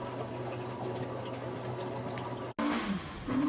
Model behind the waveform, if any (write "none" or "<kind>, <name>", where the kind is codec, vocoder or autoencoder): none